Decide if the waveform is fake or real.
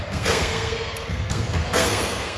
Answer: fake